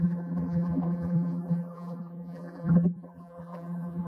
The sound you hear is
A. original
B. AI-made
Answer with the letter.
B